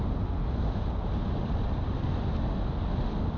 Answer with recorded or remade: recorded